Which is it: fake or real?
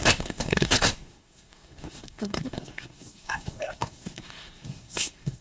fake